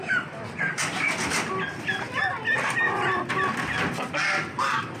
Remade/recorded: recorded